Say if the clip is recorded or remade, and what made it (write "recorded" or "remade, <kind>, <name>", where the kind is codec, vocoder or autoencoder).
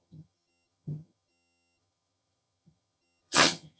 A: remade, vocoder, HiFi-GAN